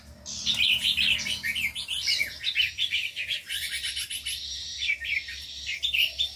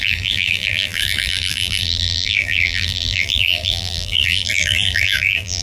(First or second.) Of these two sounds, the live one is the first